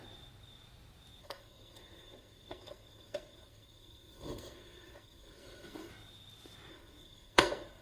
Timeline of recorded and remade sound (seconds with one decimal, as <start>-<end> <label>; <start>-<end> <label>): 0.0-1.2 recorded; 1.2-5.9 remade; 5.9-6.7 recorded; 6.7-7.8 remade